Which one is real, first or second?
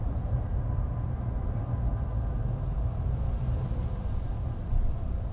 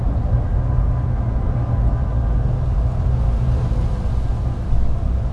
second